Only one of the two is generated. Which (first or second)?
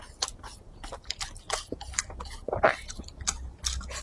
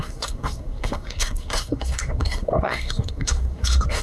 second